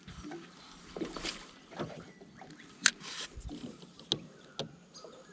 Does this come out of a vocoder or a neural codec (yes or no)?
no